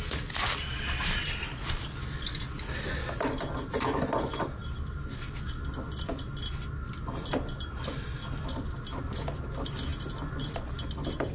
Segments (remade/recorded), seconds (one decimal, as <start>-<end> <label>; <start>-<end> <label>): 0.0-11.3 recorded

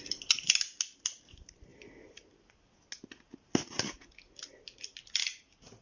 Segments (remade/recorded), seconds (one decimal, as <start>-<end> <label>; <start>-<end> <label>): 0.0-5.8 recorded

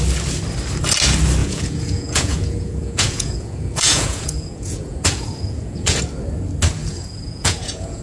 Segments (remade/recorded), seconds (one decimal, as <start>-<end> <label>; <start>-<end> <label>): 0.0-1.4 recorded; 1.4-6.0 remade; 6.0-6.8 recorded; 6.8-8.0 remade